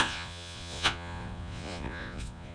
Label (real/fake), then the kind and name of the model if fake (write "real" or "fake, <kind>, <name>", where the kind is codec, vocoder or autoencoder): fake, vocoder, Vocos